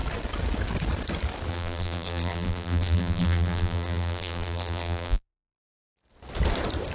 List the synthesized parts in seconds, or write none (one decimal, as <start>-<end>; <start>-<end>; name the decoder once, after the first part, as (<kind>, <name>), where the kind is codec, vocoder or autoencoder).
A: 1.5-5.6 (vocoder, BigVGAN v2)